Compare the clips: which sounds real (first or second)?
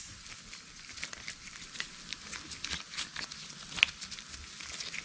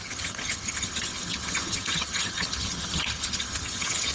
first